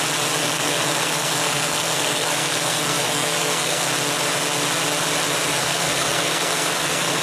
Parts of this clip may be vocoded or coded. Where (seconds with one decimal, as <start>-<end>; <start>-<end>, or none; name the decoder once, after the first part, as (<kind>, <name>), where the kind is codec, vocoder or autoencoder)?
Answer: 0.4-3.9 (codec, SNAC); 5.6-7.2

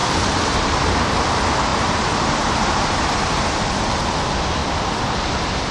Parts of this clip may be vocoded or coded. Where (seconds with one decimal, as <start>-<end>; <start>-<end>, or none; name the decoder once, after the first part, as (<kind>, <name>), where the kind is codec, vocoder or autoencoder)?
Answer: 0.0-1.0 (vocoder, BigVGAN v2); 1.7-3.9